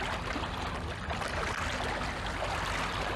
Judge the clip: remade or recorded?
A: recorded